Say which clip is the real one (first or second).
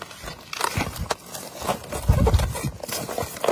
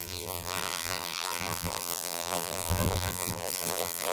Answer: first